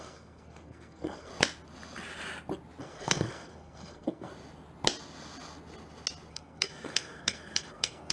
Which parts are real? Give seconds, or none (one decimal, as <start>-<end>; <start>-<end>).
1.3-2.8; 4.3-6.3